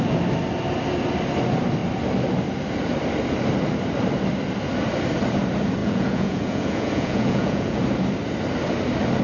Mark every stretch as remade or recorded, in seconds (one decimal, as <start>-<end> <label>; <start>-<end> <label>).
0.0-5.8 recorded; 5.8-7.8 remade; 7.8-9.2 recorded